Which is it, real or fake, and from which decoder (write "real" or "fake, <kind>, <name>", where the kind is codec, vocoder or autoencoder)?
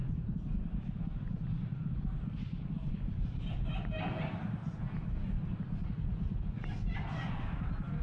real